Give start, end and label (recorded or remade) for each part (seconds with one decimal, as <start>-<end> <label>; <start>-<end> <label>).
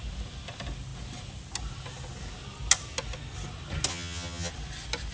0.0-3.9 recorded; 3.9-4.5 remade; 4.5-5.1 recorded